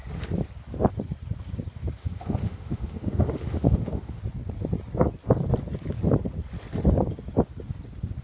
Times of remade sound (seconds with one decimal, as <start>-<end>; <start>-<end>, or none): 2.0-4.2